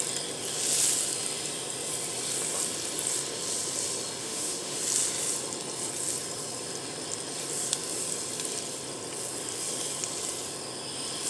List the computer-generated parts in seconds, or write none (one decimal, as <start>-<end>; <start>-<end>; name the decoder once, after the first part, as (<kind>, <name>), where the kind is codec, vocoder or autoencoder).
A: 4.2-4.8 (autoencoder, DAC-VAE)